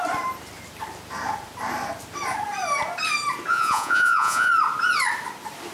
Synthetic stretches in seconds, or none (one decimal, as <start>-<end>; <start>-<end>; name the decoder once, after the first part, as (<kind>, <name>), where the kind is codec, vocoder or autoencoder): 3.5-4.5 (vocoder, Vocos)